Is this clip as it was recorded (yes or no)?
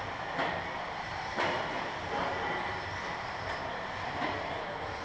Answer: yes